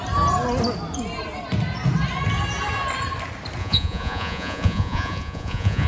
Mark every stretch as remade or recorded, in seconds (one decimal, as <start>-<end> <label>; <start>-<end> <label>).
0.0-3.6 recorded; 3.6-5.9 remade